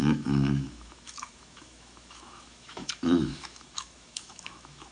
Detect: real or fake fake